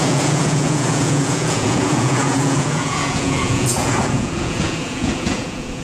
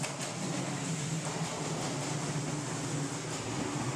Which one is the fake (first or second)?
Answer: first